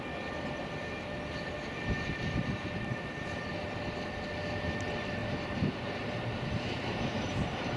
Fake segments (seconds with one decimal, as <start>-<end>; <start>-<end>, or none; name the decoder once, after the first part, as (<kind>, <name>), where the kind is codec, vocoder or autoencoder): 5.2-7.8 (vocoder, BigVGAN v2)